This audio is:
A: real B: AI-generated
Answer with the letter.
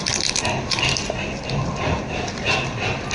A